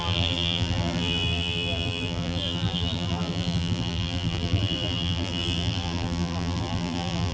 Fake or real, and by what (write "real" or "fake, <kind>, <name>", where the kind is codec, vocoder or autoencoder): fake, vocoder, BigVGAN v2